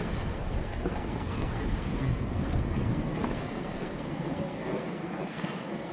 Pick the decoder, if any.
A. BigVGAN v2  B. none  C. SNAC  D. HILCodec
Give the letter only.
C